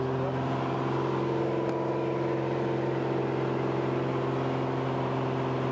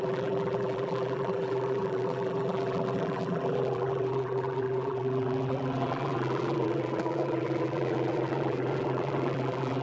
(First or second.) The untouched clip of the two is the first